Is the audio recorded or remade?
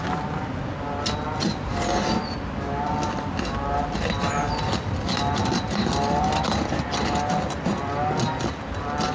recorded